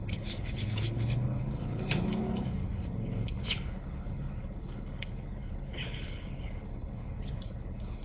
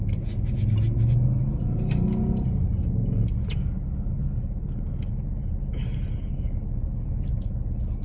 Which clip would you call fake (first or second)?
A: first